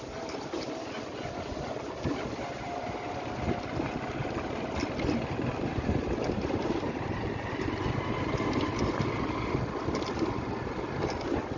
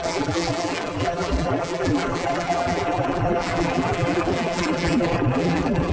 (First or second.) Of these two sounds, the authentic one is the first